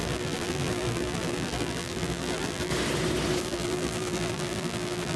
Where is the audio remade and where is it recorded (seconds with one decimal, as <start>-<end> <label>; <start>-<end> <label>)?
0.0-2.7 remade; 2.7-3.4 recorded; 3.4-5.2 remade